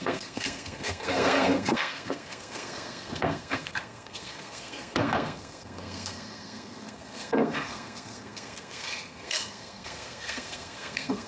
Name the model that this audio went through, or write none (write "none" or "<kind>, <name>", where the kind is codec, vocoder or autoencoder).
codec, SNAC